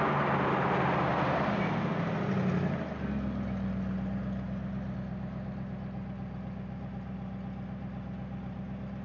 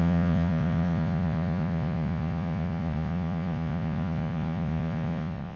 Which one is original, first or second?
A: first